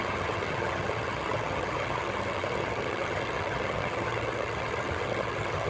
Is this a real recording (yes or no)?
no